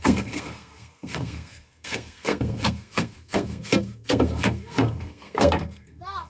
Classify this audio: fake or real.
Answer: fake